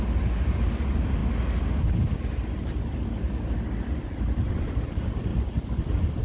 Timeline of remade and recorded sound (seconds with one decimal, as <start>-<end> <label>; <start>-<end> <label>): 0.0-1.2 remade; 1.2-2.7 recorded; 2.7-5.3 remade; 5.3-6.2 recorded